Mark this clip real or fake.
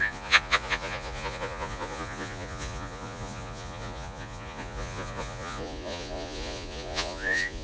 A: fake